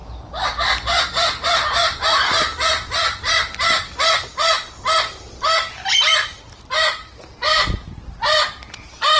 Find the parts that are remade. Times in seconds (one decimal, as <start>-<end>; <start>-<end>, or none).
none